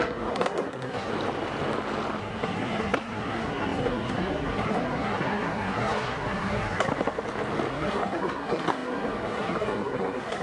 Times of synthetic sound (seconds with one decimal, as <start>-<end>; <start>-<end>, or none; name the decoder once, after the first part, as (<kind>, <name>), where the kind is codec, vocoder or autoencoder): 0.0-1.1 (codec, SNAC); 2.2-6.9; 7.7-10.4